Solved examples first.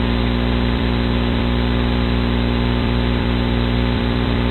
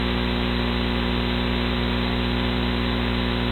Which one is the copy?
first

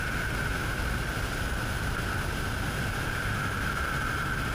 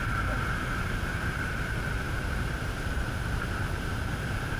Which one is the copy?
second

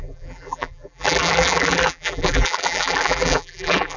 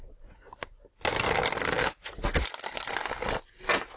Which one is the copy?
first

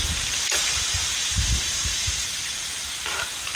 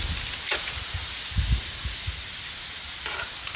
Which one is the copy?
first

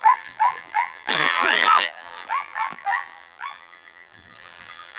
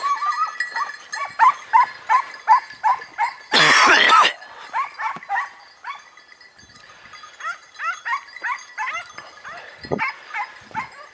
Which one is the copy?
first